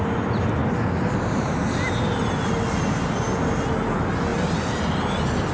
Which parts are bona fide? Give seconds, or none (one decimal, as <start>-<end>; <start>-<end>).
0.0-4.3; 4.8-5.5